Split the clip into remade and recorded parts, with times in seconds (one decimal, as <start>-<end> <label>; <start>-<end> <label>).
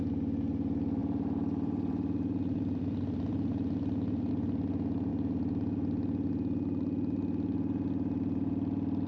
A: 0.0-1.0 recorded; 1.0-4.3 remade; 4.3-9.1 recorded